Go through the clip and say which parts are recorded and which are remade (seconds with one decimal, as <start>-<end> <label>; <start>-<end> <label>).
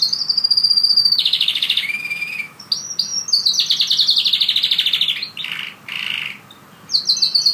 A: 0.0-1.0 recorded; 1.0-2.7 remade; 2.7-7.5 recorded